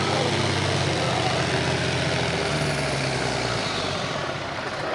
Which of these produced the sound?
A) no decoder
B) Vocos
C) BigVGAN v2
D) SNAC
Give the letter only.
A